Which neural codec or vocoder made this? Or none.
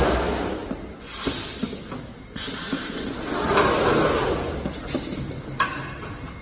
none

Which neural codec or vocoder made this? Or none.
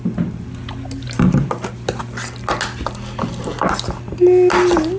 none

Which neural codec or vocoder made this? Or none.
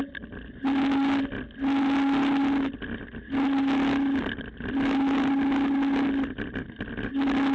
none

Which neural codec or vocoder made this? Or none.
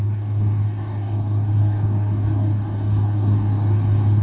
codec, DAC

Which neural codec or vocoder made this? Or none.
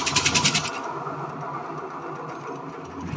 none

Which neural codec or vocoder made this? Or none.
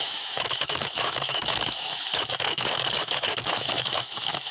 autoencoder, DAC-VAE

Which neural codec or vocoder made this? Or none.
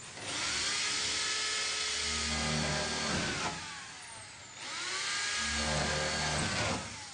none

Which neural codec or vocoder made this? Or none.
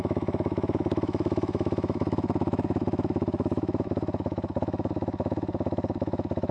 autoencoder, DAC-VAE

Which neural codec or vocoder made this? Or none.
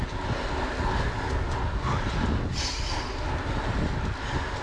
none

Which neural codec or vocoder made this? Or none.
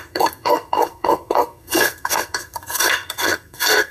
codec, SNAC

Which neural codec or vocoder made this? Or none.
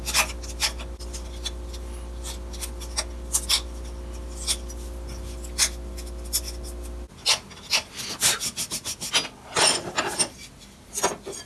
none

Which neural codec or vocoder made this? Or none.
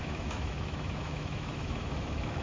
autoencoder, DAC-VAE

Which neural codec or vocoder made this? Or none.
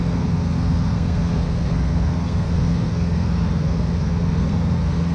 codec, SNAC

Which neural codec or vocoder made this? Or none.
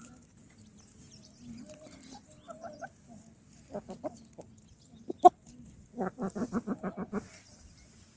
none